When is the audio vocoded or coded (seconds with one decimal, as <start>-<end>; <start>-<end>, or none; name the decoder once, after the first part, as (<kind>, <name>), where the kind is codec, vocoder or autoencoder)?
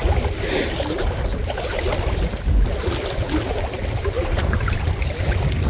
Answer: none